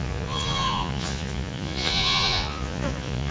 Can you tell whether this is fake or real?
fake